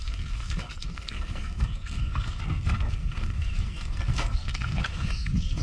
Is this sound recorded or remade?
remade